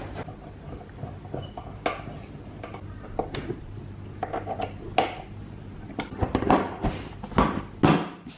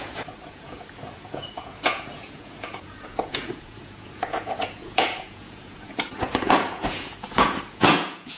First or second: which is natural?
first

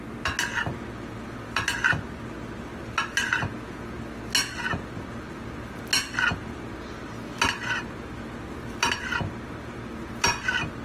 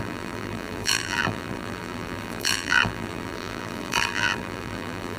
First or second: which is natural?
first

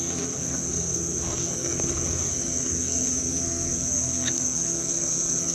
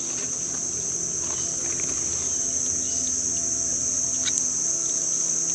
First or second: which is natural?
second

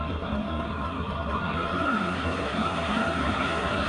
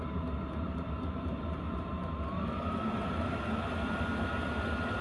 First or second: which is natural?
second